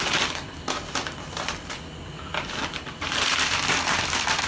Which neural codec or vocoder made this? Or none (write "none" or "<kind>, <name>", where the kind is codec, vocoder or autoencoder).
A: vocoder, BigVGAN v2